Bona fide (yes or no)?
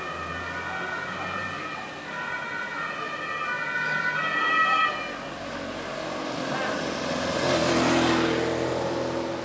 yes